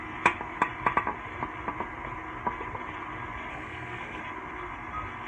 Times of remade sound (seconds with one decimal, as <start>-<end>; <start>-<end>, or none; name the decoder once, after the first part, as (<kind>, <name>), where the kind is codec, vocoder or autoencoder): 3.5-4.2 (codec, SNAC)